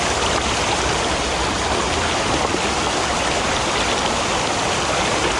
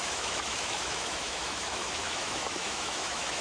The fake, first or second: second